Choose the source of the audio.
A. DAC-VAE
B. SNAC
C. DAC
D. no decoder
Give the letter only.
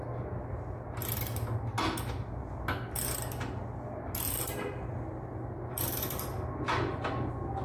D